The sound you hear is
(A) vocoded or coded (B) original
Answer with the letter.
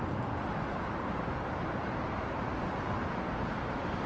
B